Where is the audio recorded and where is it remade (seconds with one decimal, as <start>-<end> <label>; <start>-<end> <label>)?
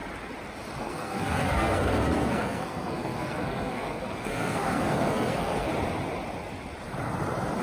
0.0-0.8 recorded; 0.8-5.7 remade; 5.7-7.6 recorded